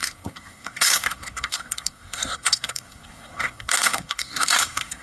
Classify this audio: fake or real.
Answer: fake